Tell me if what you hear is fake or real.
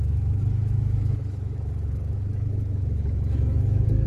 fake